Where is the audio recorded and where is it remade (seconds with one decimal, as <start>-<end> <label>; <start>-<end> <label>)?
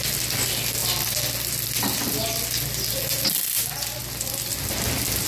0.0-5.3 recorded